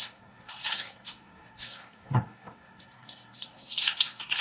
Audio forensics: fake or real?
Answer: fake